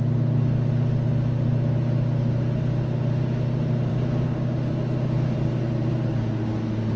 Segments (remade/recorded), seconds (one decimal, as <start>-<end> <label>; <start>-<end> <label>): 0.0-3.9 recorded; 3.9-4.7 remade; 4.7-7.0 recorded